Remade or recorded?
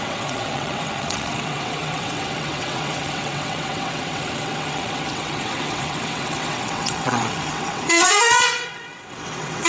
remade